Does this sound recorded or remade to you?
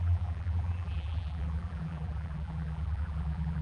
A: remade